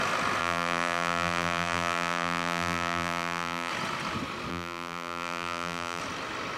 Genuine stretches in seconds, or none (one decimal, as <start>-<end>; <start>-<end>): 0.0-0.4; 3.7-4.5; 6.0-6.6